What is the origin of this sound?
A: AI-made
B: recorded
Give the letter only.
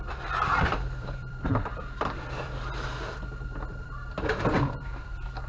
A